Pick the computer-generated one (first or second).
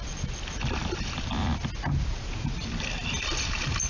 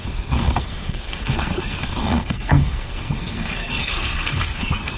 second